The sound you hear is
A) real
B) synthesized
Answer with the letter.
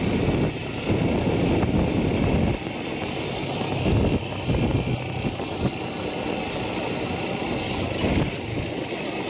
A